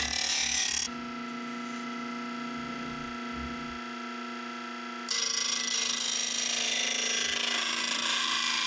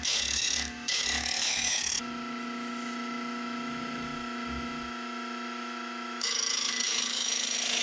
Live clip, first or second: first